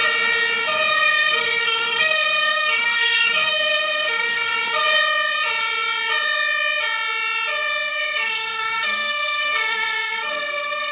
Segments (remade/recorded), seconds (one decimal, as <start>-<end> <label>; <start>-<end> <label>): 0.0-0.9 recorded; 0.9-4.5 remade; 4.5-7.9 recorded; 7.9-10.9 remade

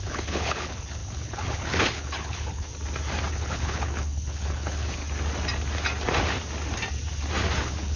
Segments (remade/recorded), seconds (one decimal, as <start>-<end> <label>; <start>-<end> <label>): 0.0-2.7 remade; 2.7-3.3 recorded; 3.3-5.0 remade; 5.0-7.6 recorded; 7.6-8.0 remade

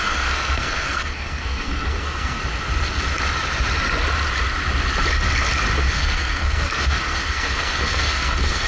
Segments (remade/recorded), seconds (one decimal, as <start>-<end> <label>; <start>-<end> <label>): 0.0-2.4 remade; 2.4-5.8 recorded; 5.8-8.7 remade

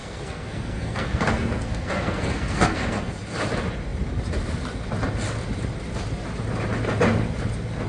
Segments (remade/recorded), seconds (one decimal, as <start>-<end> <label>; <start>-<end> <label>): 0.0-3.1 remade; 3.1-7.9 recorded

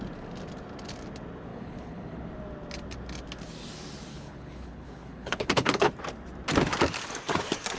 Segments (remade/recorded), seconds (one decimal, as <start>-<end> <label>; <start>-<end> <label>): 0.0-1.5 recorded; 1.5-2.2 remade; 2.2-4.1 recorded; 4.1-5.9 remade; 5.9-7.8 recorded

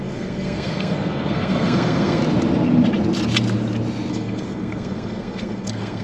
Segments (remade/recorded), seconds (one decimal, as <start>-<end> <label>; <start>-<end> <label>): 0.0-2.2 remade; 2.2-4.1 recorded; 4.1-6.0 remade

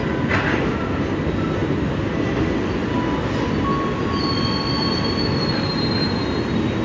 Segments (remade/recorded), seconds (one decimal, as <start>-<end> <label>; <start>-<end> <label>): 0.0-6.8 recorded